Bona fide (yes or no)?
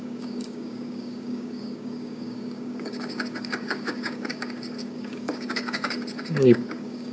no